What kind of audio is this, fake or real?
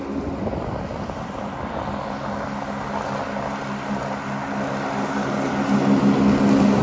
real